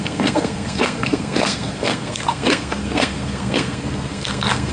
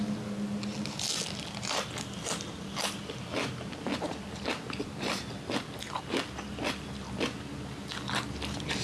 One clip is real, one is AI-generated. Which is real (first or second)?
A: second